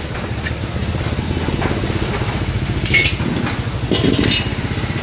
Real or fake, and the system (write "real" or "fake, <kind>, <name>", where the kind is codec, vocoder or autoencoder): real